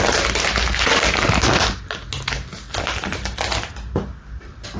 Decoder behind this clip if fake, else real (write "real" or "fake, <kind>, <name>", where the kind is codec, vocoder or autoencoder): real